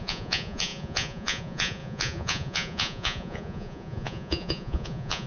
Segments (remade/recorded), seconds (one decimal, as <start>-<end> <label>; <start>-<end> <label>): 0.0-5.3 remade

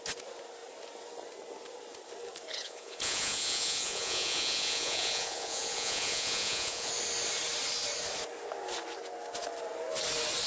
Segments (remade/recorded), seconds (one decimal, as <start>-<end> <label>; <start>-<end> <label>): 0.0-2.5 recorded; 2.5-6.9 remade; 6.9-10.5 recorded